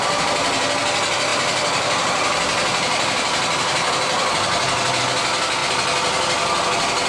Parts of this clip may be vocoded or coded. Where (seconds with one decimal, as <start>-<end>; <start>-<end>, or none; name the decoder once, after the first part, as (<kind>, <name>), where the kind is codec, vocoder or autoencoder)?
0.0-0.8 (vocoder, BigVGAN v2); 1.3-5.0